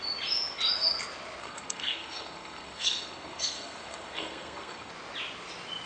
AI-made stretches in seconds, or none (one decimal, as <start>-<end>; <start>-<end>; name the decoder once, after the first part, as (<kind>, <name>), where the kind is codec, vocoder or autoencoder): 1.4-4.9 (codec, SNAC)